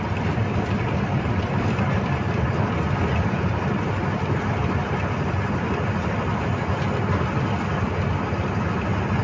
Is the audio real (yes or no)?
yes